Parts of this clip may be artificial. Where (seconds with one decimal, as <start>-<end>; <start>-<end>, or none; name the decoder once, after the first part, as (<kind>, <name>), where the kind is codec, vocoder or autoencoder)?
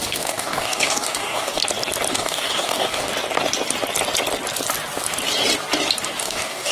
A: 0.0-1.6 (codec, DAC); 2.1-3.1; 6.2-6.7